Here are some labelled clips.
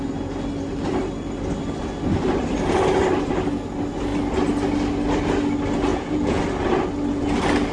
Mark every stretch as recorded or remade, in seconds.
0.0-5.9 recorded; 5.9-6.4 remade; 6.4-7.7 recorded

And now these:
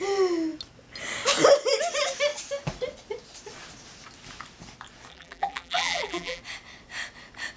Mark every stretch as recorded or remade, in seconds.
0.0-5.1 recorded; 5.1-6.4 remade; 6.4-7.6 recorded

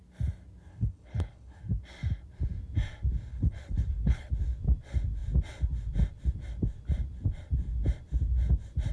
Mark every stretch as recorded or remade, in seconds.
0.0-0.7 recorded; 0.7-1.6 remade; 1.6-3.3 recorded; 3.3-4.3 remade; 4.3-8.9 recorded

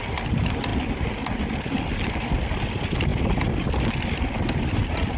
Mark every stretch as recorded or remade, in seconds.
0.0-5.2 recorded